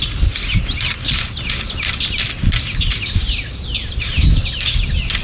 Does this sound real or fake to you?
real